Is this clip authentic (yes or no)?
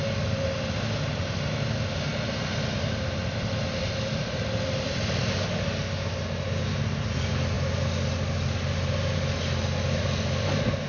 yes